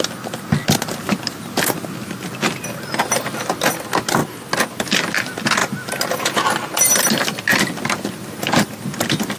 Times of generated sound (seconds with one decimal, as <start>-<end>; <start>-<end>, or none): none